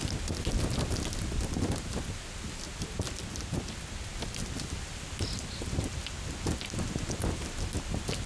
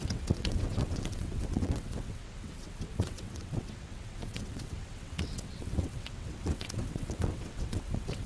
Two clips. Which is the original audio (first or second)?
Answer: first